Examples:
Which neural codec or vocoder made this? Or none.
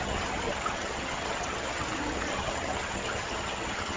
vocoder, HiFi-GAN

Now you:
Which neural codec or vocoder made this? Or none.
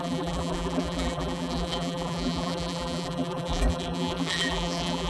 vocoder, BigVGAN v2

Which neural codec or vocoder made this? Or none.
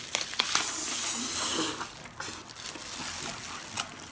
none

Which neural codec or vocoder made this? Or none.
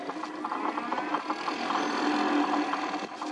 none